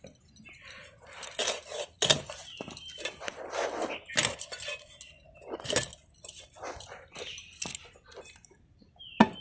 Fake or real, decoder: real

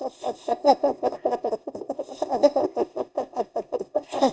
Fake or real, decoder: fake, codec, ZipCodec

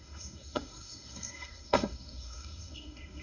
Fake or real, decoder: fake, codec, SNAC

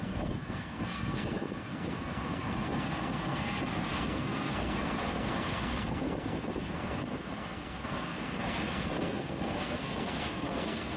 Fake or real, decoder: fake, codec, SNAC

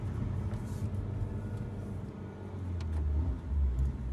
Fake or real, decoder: real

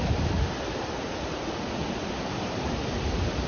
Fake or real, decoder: real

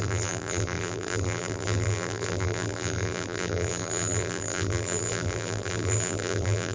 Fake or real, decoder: fake, vocoder, BigVGAN v2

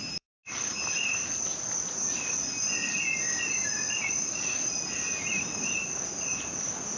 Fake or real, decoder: real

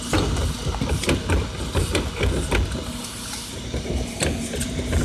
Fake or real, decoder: real